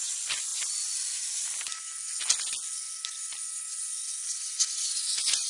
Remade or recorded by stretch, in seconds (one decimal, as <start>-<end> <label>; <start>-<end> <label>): 0.0-0.5 remade; 0.5-3.8 recorded; 3.8-5.5 remade